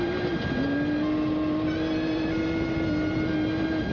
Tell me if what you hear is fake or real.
real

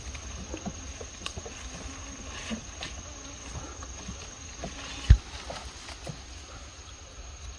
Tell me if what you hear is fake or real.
real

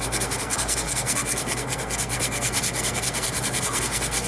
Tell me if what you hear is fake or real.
fake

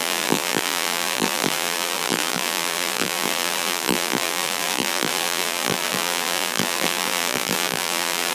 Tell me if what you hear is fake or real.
fake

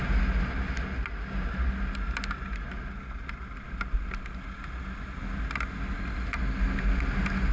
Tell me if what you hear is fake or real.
real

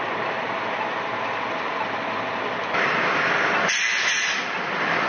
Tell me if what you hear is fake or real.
real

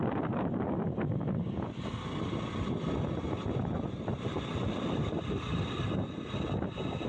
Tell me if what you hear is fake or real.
real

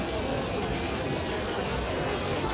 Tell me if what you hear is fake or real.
fake